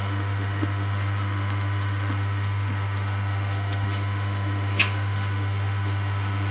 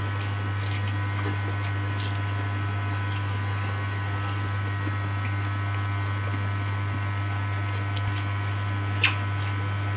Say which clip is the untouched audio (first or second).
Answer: second